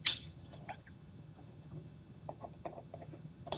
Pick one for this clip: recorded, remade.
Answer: remade